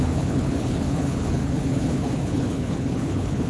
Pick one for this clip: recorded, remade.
remade